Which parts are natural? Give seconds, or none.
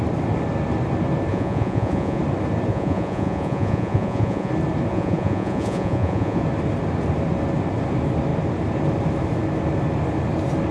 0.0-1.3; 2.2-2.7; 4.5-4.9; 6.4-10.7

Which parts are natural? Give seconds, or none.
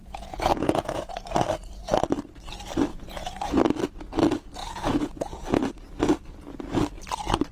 1.1-2.9; 3.6-4.6; 5.7-7.5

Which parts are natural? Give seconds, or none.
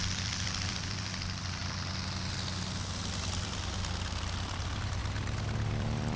1.6-3.0; 5.0-5.7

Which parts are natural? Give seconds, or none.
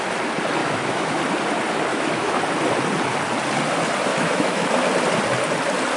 0.0-0.6; 1.2-1.9; 2.4-4.1; 4.7-6.0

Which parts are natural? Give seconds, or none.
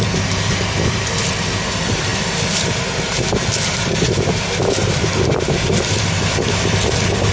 2.1-3.3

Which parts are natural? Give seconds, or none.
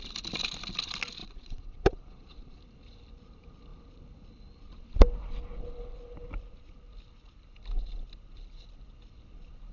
0.0-1.2; 2.6-9.7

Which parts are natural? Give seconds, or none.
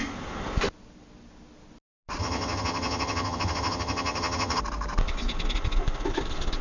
0.0-2.2; 4.6-6.6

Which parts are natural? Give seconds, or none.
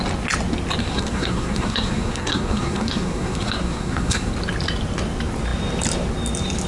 0.0-0.8; 4.3-6.7